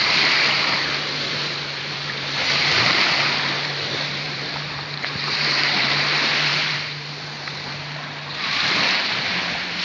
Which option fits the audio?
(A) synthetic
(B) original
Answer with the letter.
A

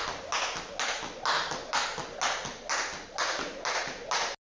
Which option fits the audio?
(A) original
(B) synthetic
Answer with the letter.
A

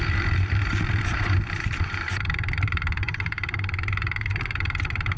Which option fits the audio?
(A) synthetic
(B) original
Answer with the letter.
A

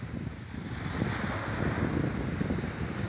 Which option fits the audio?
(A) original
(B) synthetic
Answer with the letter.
A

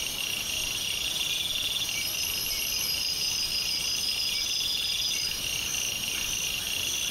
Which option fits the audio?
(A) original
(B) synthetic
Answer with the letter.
A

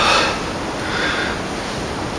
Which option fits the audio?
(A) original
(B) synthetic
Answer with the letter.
A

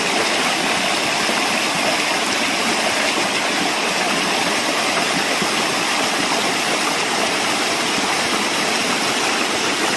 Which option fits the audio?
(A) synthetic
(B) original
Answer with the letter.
A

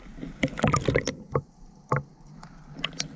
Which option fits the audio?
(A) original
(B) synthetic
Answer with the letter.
A